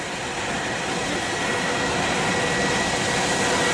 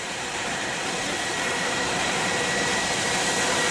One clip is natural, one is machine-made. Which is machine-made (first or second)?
second